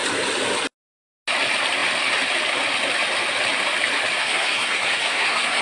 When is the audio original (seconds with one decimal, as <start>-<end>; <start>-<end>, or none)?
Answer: 0.0-4.2